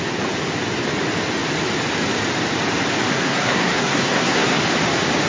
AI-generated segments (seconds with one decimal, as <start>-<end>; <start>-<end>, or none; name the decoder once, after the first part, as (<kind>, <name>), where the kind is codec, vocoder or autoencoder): 3.1-4.6 (codec, SNAC)